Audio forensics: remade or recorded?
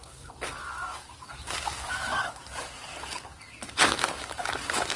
remade